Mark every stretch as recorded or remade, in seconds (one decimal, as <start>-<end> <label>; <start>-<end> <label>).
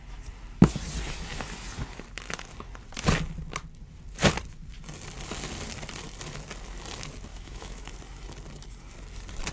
0.0-7.3 recorded; 7.3-7.9 remade; 7.9-9.5 recorded